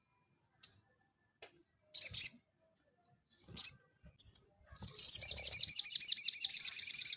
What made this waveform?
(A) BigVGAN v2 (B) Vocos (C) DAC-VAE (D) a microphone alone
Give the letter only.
D